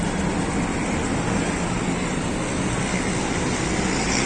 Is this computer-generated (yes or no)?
no